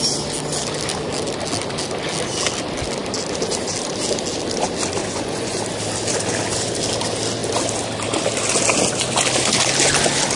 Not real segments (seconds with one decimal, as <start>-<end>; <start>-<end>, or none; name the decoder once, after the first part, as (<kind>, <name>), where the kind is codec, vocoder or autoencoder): 5.0-5.6 (vocoder, Vocos)